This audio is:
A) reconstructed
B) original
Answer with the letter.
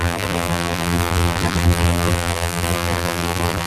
A